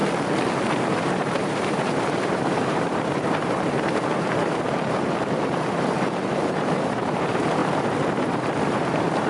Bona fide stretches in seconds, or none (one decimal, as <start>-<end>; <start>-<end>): 0.0-0.9